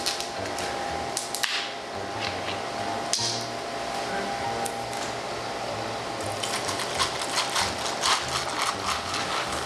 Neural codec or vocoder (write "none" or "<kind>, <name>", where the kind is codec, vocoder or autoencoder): none